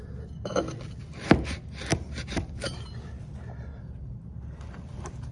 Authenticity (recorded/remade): recorded